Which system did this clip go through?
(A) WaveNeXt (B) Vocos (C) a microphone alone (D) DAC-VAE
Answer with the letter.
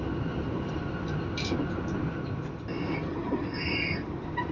C